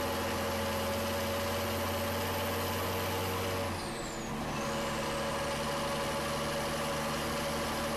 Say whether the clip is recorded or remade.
recorded